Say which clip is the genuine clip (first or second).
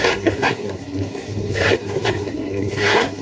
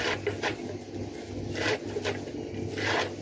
second